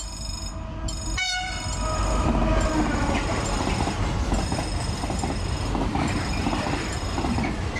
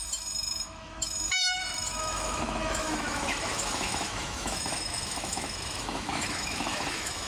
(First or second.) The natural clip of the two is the first